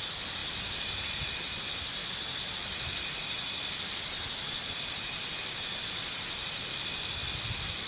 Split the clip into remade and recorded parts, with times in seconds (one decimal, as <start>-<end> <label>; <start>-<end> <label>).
0.0-7.9 recorded